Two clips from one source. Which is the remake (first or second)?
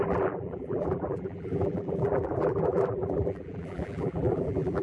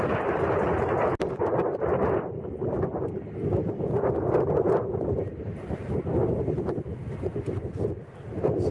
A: first